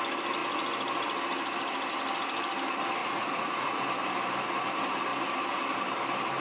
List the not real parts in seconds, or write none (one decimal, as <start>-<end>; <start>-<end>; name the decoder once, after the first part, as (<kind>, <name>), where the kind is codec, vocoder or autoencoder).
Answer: 3.0-3.8 (vocoder, Vocos)

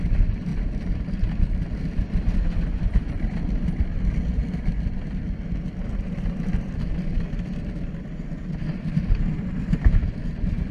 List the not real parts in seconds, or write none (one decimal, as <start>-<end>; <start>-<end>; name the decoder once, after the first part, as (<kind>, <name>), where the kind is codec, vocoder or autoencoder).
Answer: 0.5-4.0 (vocoder, BigVGAN v2); 4.4-5.2

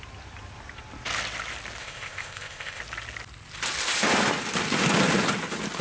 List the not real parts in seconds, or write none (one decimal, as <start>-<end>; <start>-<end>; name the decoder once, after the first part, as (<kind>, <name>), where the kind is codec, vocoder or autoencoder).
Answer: 1.8-2.8 (codec, ZipCodec)

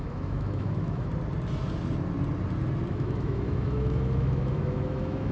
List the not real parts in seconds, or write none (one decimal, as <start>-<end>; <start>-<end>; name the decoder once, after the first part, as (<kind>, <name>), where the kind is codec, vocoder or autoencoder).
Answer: 0.0-1.1 (autoencoder, DAC-VAE); 2.9-5.3

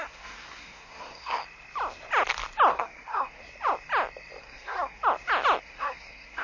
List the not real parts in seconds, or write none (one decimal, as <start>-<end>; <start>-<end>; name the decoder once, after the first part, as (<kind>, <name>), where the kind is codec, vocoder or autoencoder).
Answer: 0.0-1.4 (codec, SNAC); 2.7-3.4; 4.4-5.0; 5.6-6.4

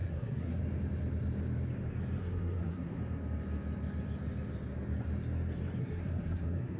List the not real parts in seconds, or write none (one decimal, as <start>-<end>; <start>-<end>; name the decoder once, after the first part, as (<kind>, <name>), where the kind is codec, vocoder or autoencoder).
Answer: 0.0-0.6 (codec, SNAC); 2.2-3.0; 5.8-6.8